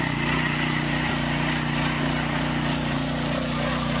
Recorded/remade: recorded